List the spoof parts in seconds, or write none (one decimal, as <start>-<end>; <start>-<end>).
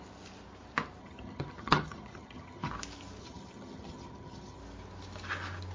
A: 1.0-2.7; 3.2-4.6